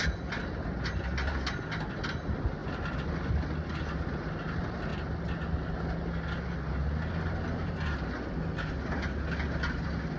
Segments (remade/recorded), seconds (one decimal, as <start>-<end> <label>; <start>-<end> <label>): 0.0-10.2 recorded